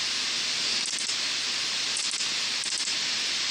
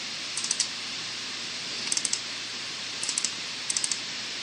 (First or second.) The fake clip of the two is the second